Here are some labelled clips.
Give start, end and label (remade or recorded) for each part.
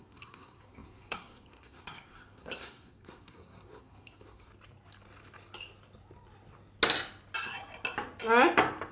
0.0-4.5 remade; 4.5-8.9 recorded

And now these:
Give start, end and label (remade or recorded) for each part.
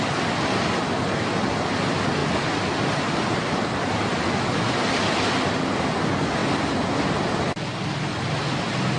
0.0-9.0 recorded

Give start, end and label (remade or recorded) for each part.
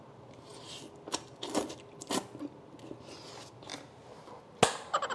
0.0-5.1 recorded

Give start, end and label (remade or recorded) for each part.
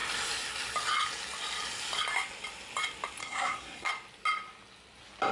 0.0-3.2 recorded; 3.2-3.9 remade; 3.9-5.3 recorded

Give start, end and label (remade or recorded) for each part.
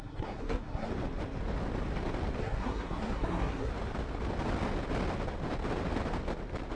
0.0-0.9 remade; 0.9-2.4 recorded; 2.4-3.7 remade; 3.7-6.8 recorded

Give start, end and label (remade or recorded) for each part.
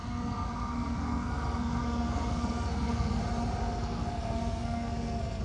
0.0-3.2 remade; 3.2-3.6 recorded; 3.6-5.4 remade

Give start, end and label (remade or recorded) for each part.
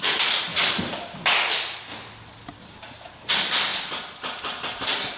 0.0-5.2 recorded